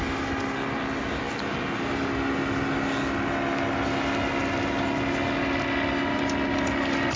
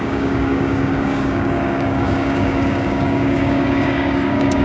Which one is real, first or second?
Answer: first